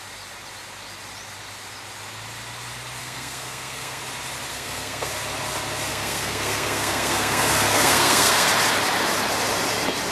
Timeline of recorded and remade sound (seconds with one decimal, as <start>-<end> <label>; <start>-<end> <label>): 0.0-3.0 recorded; 3.0-4.0 remade; 4.0-4.5 recorded; 4.5-5.1 remade; 5.1-5.9 recorded; 5.9-8.5 remade; 8.5-10.1 recorded